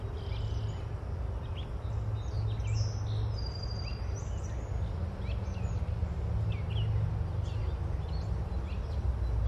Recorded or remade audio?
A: recorded